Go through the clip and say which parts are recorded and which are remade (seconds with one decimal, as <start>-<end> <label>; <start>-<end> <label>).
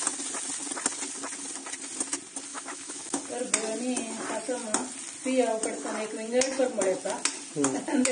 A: 0.0-2.5 recorded; 2.5-3.2 remade; 3.2-8.1 recorded